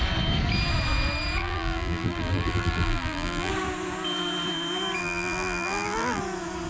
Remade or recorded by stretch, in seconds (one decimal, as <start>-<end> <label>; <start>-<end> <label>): 0.0-1.4 recorded; 1.4-3.5 remade; 3.5-5.0 recorded; 5.0-6.2 remade; 6.2-6.7 recorded